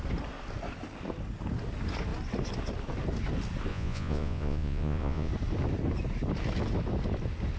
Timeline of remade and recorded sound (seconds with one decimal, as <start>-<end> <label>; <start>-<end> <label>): 0.0-3.7 recorded; 3.7-5.3 remade; 5.3-7.6 recorded